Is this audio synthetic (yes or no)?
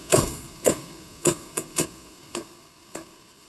yes